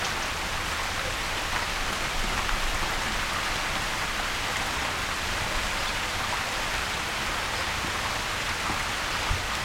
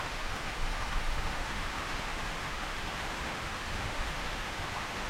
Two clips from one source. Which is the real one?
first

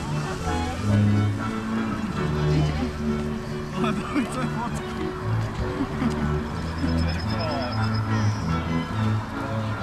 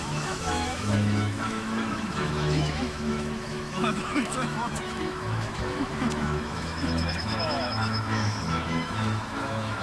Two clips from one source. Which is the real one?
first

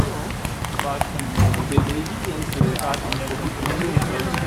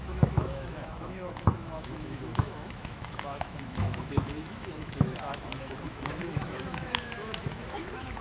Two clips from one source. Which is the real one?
first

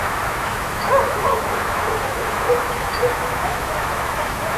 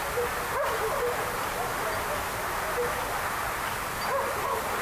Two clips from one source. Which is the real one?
second